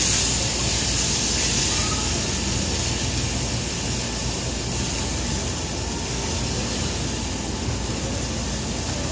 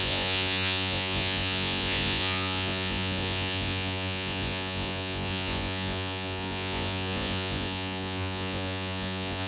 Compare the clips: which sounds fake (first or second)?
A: second